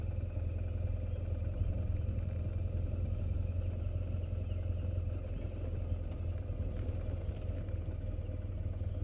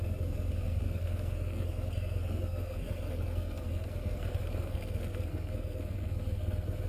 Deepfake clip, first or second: second